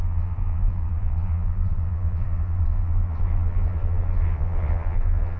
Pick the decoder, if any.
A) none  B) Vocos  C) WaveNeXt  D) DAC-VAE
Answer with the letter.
B